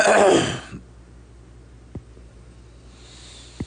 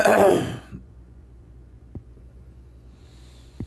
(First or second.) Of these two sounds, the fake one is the second